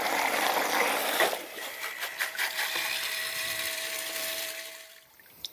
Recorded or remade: remade